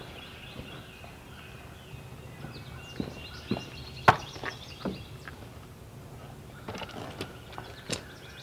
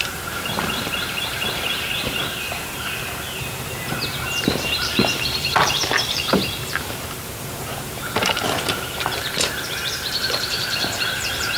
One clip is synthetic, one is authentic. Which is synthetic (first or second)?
second